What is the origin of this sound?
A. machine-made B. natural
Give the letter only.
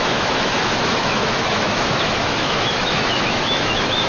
A